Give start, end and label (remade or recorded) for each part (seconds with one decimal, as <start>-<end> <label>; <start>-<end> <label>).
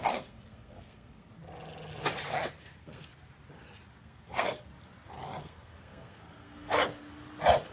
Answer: 0.0-1.3 remade; 1.3-2.6 recorded; 2.6-3.1 remade; 3.1-4.0 recorded; 4.0-4.7 remade; 4.7-5.4 recorded; 5.4-6.8 remade; 6.8-7.7 recorded